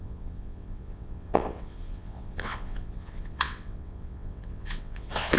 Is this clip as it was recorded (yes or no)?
no